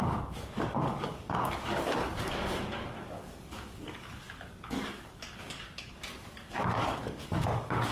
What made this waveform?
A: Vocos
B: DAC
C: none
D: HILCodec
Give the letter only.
B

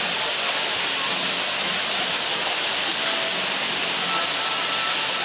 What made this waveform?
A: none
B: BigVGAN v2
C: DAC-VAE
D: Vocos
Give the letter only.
A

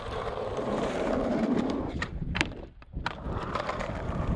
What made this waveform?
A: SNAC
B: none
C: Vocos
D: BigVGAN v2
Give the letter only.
D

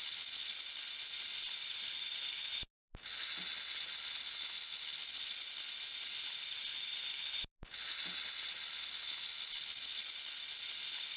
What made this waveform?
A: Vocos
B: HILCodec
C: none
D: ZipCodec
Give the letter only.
C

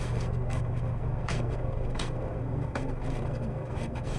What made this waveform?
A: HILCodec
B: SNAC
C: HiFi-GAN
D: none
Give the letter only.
B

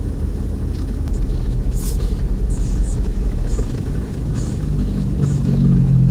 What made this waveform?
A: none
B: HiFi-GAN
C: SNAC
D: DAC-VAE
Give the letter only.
D